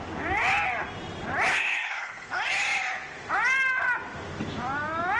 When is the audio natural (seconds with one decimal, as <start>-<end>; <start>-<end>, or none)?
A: 0.0-1.5; 2.3-5.2